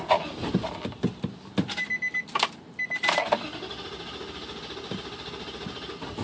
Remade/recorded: recorded